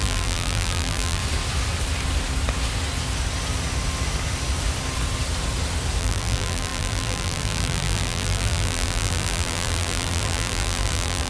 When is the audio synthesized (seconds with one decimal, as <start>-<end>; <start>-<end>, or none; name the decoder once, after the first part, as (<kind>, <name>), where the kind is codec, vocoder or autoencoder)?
0.0-1.2 (vocoder, BigVGAN v2); 6.0-11.3